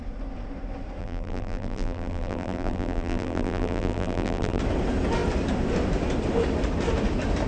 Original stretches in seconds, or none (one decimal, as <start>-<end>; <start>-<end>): 0.0-1.0; 4.6-7.5